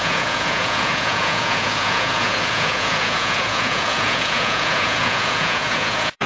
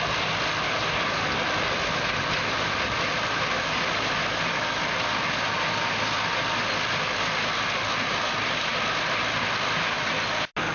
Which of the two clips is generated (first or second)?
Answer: first